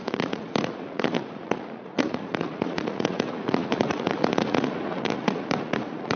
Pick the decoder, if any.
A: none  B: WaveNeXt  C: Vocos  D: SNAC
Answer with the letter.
C